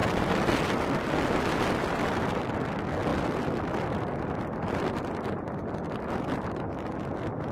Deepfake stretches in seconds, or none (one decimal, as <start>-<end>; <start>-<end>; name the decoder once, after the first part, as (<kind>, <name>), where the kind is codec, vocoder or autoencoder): 0.0-2.5 (vocoder, BigVGAN v2); 3.1-6.6